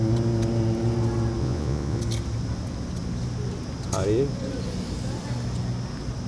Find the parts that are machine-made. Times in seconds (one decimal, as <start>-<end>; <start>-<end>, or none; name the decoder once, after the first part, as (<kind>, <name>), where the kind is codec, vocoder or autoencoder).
1.4-2.0 (vocoder, Vocos)